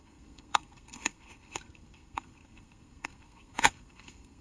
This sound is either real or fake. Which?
fake